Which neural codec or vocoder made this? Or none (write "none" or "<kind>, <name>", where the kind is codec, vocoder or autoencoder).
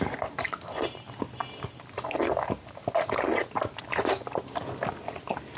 none